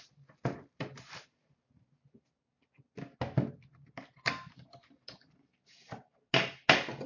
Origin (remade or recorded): recorded